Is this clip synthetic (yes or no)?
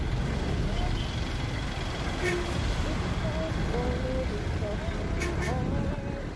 no